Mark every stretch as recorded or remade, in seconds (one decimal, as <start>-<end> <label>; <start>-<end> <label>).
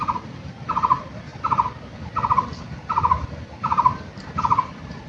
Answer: 0.0-5.1 recorded